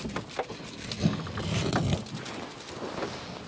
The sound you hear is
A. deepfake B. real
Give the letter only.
B